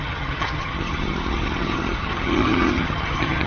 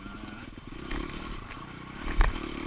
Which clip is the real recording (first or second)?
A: second